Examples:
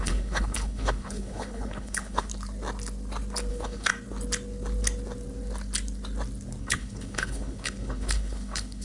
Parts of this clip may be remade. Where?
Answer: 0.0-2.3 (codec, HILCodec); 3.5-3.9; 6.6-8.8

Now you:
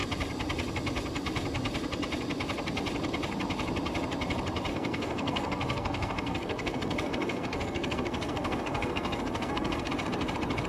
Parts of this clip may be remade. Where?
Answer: 4.7-9.9 (codec, SNAC)

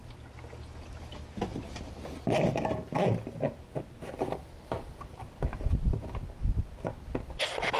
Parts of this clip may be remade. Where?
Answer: 4.4-5.3 (vocoder, BigVGAN v2)